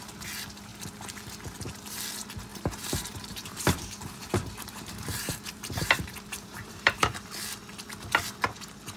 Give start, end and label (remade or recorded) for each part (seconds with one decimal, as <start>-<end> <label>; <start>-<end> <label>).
0.0-2.5 recorded; 2.5-7.3 remade; 7.3-9.0 recorded